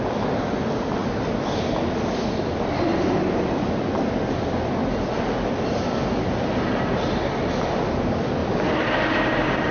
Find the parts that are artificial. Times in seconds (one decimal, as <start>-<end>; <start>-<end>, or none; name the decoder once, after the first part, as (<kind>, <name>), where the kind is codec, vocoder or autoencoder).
4.8-6.3 (vocoder, BigVGAN v2); 8.4-9.7